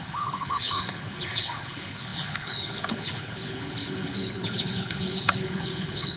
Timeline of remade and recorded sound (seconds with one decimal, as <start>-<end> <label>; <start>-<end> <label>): 0.0-6.2 remade